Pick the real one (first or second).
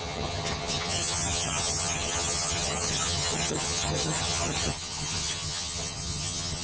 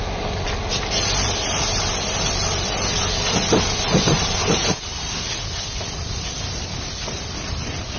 second